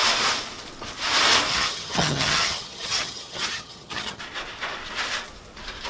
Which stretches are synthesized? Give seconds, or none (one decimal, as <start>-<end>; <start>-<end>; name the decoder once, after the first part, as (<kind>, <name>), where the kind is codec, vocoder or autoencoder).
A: 1.5-4.2 (vocoder, HiFi-GAN)